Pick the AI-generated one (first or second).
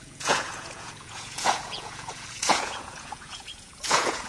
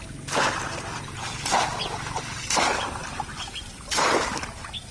first